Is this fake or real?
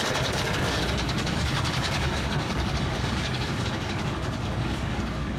fake